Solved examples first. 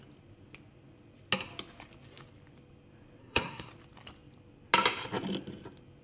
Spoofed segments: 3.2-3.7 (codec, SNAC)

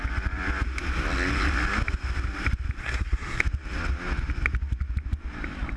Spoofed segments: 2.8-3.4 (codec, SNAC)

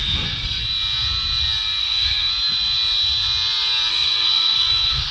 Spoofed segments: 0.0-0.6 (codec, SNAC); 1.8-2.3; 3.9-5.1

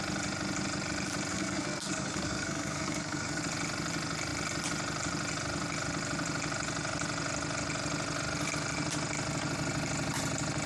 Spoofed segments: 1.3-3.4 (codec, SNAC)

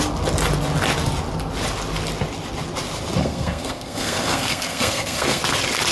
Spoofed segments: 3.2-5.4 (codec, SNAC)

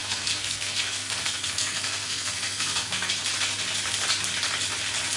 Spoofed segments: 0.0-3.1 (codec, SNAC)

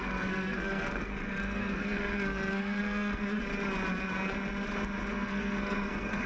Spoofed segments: 0.0-3.4 (codec, SNAC); 5.1-6.3

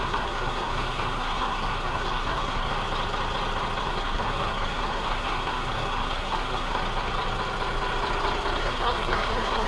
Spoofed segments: 0.0-2.7 (codec, SNAC); 3.8-6.8; 8.6-9.7